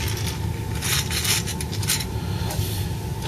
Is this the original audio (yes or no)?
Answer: yes